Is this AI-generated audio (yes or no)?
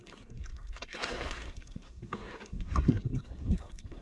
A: yes